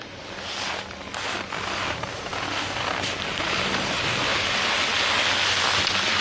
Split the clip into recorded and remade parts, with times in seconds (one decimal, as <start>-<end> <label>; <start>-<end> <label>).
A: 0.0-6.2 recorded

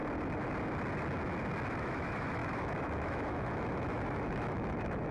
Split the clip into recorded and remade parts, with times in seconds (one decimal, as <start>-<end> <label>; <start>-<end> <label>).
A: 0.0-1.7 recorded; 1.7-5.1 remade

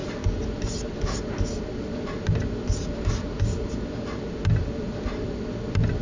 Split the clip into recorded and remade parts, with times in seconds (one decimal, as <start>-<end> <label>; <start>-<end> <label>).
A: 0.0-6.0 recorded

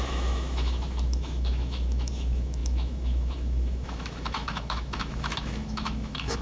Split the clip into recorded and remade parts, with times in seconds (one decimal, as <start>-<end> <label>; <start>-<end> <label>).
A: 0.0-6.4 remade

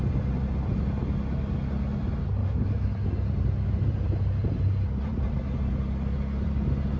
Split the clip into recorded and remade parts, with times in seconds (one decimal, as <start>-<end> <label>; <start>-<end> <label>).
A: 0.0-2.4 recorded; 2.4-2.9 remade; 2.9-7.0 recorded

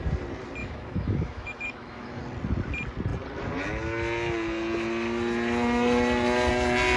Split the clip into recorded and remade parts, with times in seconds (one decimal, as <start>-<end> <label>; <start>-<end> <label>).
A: 0.0-0.6 recorded; 0.6-2.2 remade; 2.2-7.0 recorded

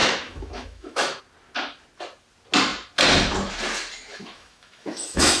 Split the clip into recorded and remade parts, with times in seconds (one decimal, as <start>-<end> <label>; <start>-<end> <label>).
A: 0.0-1.2 remade; 1.2-4.1 recorded; 4.1-5.4 remade

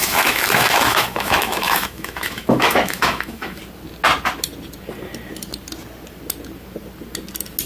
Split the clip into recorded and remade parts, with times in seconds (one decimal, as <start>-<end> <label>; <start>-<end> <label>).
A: 0.0-3.6 remade; 3.6-7.7 recorded